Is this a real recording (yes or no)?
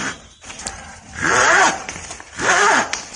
no